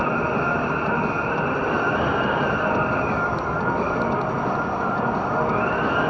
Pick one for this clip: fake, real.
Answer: real